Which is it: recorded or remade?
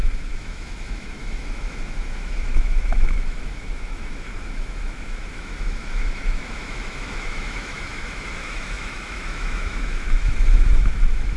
remade